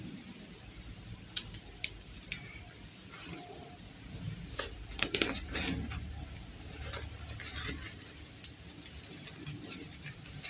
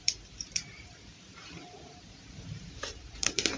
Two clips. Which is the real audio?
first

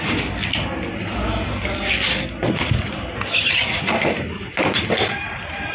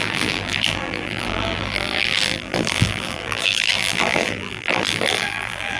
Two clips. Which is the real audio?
first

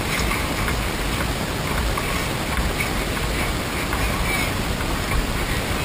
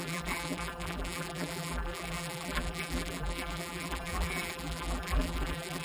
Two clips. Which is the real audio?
first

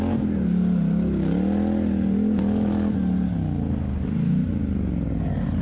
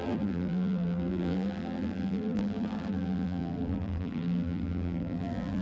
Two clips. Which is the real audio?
first